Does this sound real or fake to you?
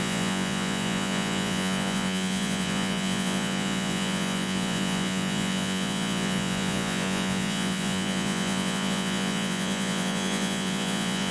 fake